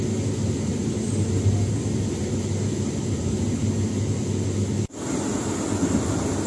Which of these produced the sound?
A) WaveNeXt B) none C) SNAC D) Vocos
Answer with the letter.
B